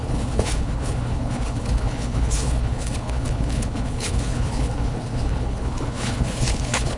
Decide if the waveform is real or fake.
fake